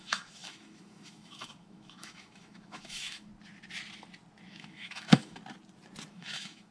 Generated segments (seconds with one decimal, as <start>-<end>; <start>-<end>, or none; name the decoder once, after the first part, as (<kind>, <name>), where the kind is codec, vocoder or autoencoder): 0.0-3.3 (autoencoder, DAC-VAE); 4.5-5.4; 6.1-6.7